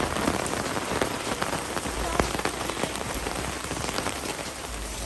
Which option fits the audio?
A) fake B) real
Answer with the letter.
A